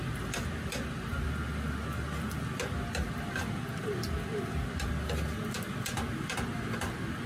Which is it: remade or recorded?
recorded